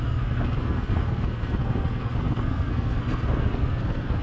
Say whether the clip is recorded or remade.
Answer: remade